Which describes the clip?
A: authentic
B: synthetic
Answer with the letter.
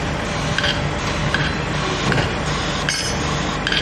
A